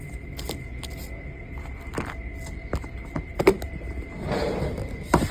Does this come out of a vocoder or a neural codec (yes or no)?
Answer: no